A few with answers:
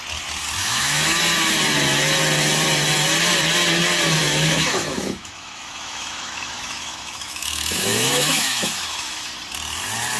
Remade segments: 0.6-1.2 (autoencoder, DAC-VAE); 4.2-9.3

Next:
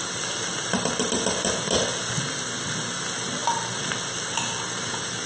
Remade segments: none

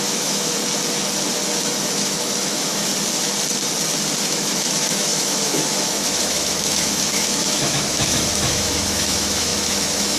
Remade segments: 0.0-0.6 (autoencoder, DAC-VAE); 1.6-2.9; 4.2-10.2

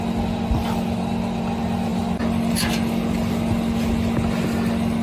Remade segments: none

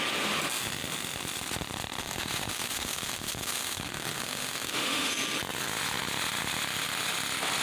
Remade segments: 2.0-5.1 (autoencoder, DAC-VAE)

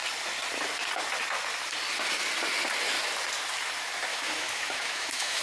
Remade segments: 4.1-5.4 (autoencoder, DAC-VAE)